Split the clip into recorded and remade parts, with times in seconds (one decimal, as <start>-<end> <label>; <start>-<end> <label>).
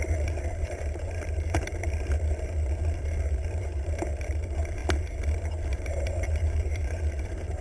0.0-4.8 remade; 4.8-5.6 recorded; 5.6-7.6 remade